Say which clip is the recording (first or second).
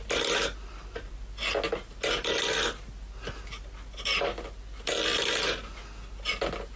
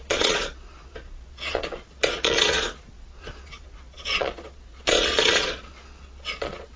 first